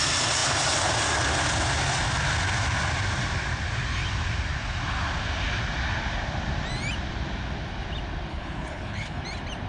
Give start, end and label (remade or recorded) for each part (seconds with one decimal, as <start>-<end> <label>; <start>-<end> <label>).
0.0-8.3 recorded; 8.3-9.2 remade; 9.2-9.7 recorded